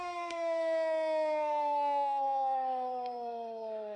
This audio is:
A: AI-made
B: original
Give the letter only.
A